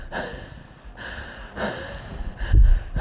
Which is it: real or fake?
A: real